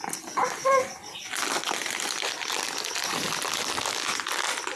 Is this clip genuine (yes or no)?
yes